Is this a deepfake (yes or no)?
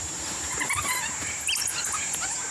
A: no